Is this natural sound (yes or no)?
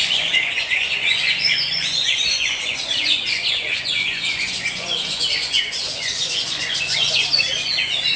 no